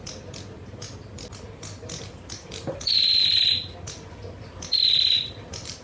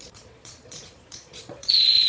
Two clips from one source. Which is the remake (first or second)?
second